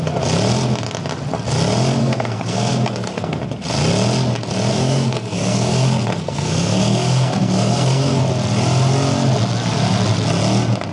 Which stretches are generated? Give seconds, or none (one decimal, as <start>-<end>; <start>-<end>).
2.0-3.4; 4.7-8.2